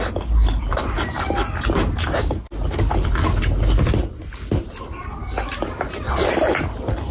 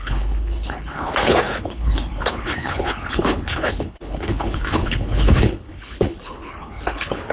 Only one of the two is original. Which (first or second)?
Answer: first